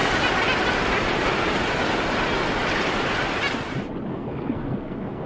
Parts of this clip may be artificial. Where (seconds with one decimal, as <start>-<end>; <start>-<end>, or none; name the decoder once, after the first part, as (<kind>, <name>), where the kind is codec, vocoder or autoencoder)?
4.1-5.3 (codec, SNAC)